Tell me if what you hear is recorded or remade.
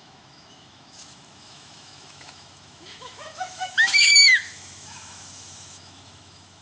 remade